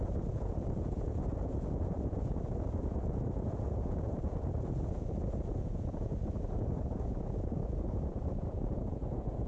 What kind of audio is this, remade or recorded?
remade